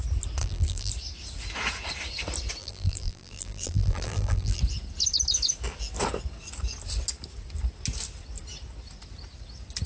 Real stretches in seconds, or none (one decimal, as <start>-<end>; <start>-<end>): 0.0-0.4; 0.9-2.6; 4.6-9.9